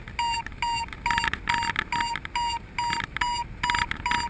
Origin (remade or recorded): recorded